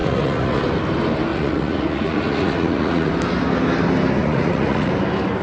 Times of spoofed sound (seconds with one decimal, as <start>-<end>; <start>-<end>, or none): 0.0-0.6; 1.3-3.1; 4.2-4.9